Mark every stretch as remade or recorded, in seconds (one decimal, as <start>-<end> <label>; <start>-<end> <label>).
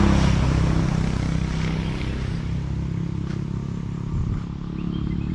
0.0-5.3 recorded